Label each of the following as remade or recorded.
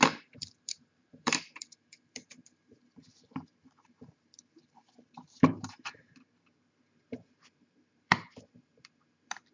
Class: remade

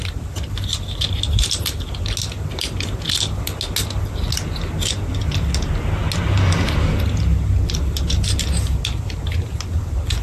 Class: recorded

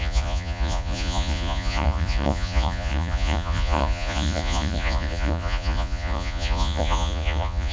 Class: remade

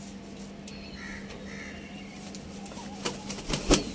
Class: recorded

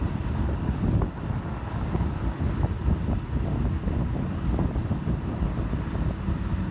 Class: recorded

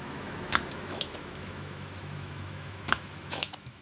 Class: remade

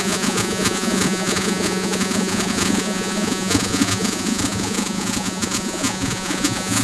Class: remade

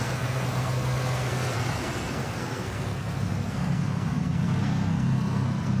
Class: remade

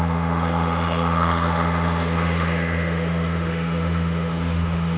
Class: remade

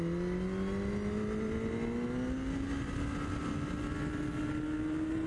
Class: recorded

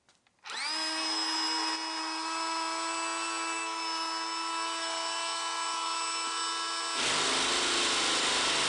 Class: recorded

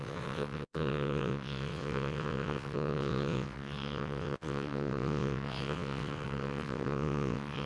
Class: remade